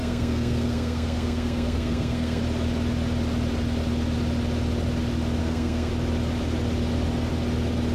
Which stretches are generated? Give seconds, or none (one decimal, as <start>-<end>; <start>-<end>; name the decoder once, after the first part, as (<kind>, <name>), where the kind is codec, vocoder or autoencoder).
0.0-2.4 (codec, SNAC); 5.4-5.9